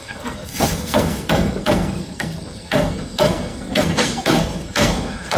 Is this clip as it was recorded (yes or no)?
no